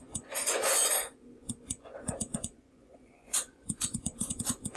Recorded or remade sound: remade